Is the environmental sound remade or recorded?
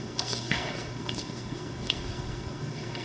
remade